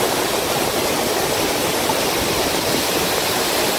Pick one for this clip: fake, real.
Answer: fake